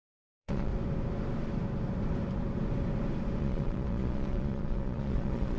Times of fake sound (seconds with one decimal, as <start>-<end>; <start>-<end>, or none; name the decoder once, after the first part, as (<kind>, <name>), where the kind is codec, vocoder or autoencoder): 0.0-0.7 (vocoder, Vocos); 3.4-5.6